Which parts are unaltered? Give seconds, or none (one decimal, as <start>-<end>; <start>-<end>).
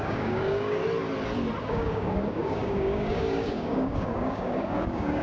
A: 0.8-1.7